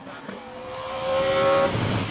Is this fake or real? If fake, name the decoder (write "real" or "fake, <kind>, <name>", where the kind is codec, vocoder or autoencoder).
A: real